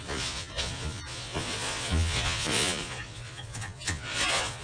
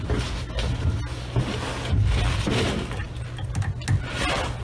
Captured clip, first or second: second